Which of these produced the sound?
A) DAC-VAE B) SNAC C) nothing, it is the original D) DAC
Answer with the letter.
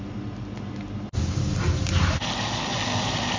C